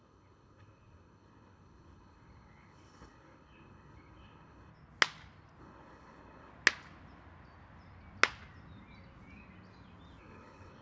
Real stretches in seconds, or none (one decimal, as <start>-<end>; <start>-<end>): 4.7-5.6; 6.5-10.2